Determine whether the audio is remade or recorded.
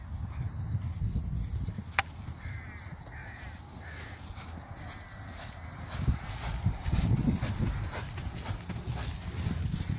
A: recorded